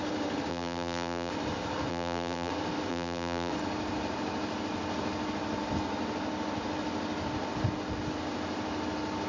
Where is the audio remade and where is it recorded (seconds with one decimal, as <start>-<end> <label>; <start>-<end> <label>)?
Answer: 0.0-0.5 recorded; 0.5-1.3 remade; 1.3-1.9 recorded; 1.9-2.5 remade; 2.5-2.9 recorded; 2.9-3.5 remade; 3.5-9.3 recorded